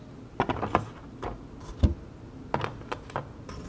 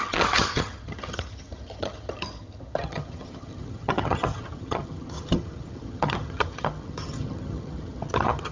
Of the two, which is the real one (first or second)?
first